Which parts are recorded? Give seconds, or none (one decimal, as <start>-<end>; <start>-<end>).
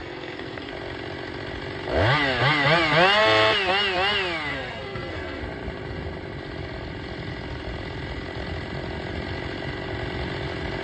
0.7-4.5; 5.4-10.8